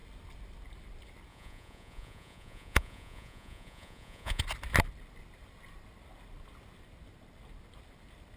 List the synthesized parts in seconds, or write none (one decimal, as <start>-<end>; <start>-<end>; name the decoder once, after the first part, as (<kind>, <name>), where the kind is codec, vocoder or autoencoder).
1.3-4.4 (vocoder, Vocos)